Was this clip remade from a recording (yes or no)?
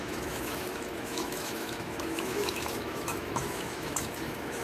yes